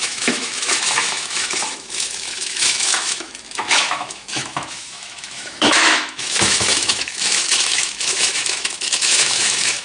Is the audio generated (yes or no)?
yes